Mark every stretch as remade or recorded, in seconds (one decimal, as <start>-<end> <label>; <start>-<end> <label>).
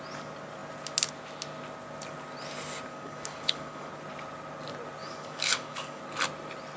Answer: 0.0-2.9 recorded; 2.9-3.9 remade; 3.9-5.0 recorded; 5.0-6.0 remade; 6.0-6.8 recorded